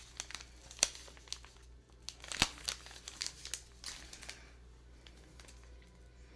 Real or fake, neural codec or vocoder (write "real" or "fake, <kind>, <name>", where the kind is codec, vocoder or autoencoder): real